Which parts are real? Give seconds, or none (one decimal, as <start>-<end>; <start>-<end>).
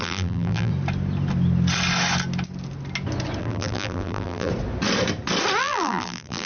0.7-3.4; 4.5-5.6